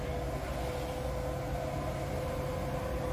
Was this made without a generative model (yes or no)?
yes